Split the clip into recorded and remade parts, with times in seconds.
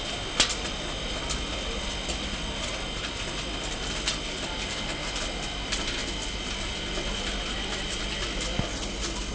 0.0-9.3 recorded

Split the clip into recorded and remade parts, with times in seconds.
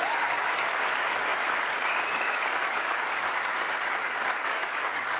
0.0-5.2 remade